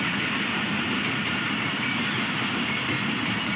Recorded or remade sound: recorded